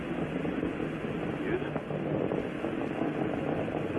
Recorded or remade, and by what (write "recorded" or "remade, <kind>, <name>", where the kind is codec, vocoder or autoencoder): recorded